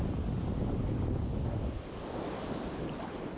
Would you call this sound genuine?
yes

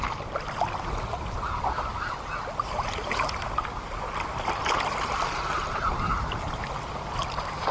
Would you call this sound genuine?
yes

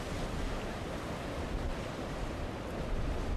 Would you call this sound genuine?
yes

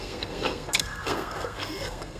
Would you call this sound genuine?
no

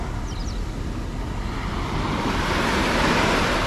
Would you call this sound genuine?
yes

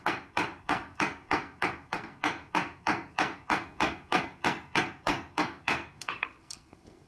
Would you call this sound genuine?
no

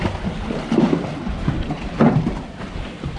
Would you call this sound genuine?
yes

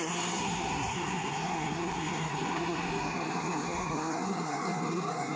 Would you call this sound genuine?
no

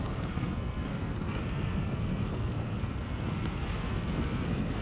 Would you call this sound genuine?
no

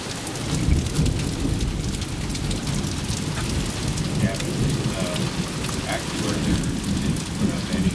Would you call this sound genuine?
yes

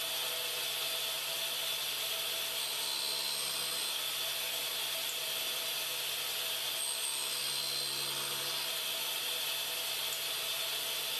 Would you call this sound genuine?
yes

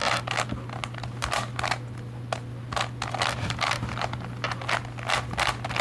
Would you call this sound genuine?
yes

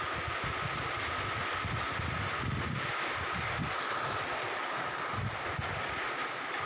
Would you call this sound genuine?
yes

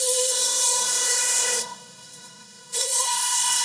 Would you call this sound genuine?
no